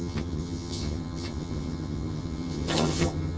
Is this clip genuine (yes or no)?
no